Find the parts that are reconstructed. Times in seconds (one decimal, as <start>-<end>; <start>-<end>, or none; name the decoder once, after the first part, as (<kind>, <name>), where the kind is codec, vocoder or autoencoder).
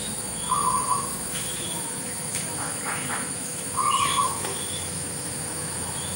0.0-6.2 (autoencoder, DAC-VAE)